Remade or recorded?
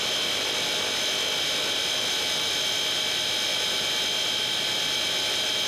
recorded